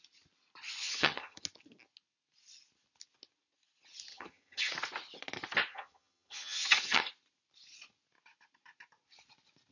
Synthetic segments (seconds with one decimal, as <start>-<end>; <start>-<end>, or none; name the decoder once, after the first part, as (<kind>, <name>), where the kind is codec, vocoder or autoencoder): 0.8-1.4 (vocoder, HiFi-GAN); 4.1-4.7; 5.7-7.1